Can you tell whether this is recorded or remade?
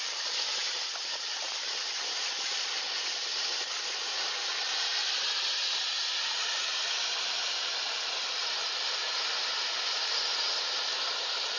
remade